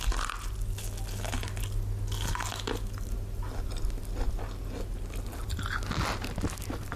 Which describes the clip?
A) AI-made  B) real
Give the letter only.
B